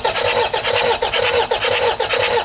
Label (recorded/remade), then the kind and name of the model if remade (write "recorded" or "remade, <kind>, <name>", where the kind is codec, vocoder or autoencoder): recorded